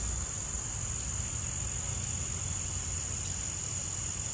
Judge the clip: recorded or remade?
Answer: recorded